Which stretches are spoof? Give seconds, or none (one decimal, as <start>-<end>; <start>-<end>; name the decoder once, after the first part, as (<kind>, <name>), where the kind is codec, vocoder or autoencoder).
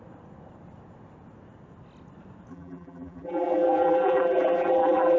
2.5-5.2 (vocoder, BigVGAN v2)